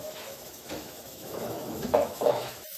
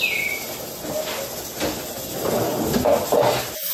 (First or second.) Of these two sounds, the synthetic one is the first